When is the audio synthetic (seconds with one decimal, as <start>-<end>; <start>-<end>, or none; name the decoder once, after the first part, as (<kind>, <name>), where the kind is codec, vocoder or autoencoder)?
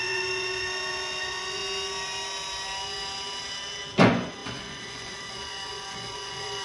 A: 0.0-1.6 (vocoder, Vocos); 4.0-6.6